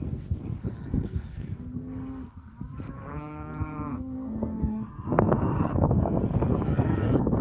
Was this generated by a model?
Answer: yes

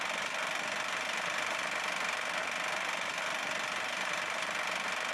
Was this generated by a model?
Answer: yes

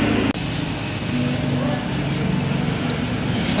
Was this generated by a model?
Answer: no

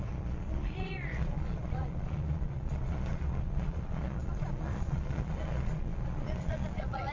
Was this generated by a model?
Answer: yes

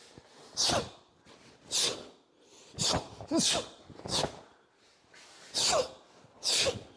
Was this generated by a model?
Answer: no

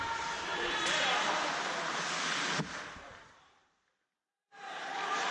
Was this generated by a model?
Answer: yes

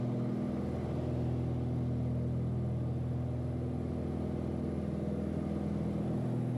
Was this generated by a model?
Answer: no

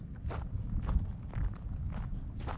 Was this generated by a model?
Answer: no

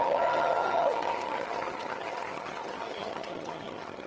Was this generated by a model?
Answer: yes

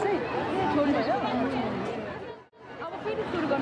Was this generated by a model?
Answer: no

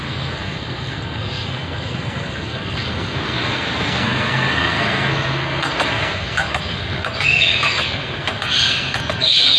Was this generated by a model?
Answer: yes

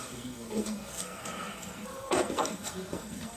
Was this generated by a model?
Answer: yes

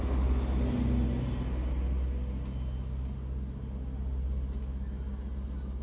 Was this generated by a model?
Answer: no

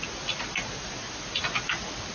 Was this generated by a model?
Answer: no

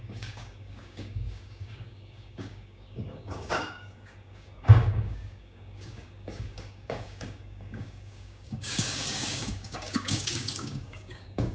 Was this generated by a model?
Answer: yes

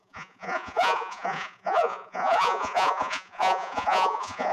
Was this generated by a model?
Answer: yes